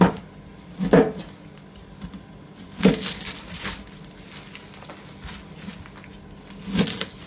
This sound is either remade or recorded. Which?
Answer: recorded